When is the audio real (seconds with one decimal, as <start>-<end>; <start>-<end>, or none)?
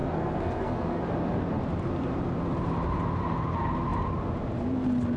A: 1.0-5.2